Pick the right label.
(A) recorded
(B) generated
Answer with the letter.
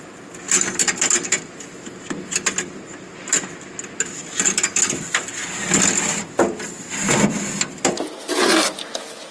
A